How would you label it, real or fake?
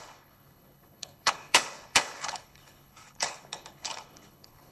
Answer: fake